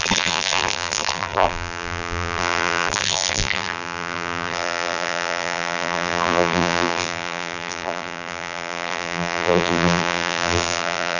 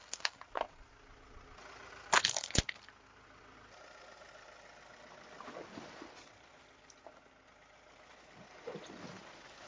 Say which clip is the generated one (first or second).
first